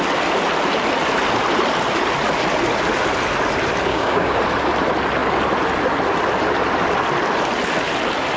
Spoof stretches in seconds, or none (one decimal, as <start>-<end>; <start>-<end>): 3.9-4.4